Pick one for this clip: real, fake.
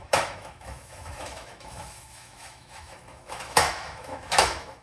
fake